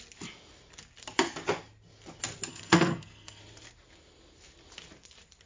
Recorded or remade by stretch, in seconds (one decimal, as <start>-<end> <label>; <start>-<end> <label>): 0.0-2.5 recorded; 2.5-3.4 remade; 3.4-5.5 recorded